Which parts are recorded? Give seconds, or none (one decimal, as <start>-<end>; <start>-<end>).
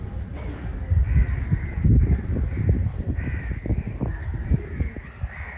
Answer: 0.0-5.6